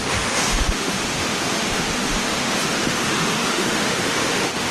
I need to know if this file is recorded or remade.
remade